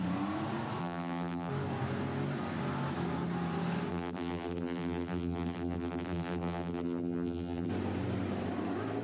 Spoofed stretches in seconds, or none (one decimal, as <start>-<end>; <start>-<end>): 0.8-1.5; 3.9-7.7